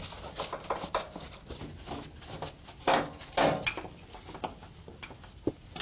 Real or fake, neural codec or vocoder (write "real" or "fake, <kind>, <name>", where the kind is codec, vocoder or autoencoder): real